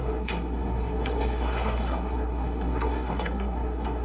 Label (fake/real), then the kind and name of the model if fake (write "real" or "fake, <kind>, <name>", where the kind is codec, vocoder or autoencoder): fake, codec, SNAC